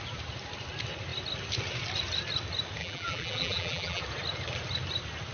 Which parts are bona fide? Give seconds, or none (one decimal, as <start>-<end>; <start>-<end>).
0.0-2.8; 4.0-5.3